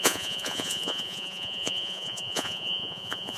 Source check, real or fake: fake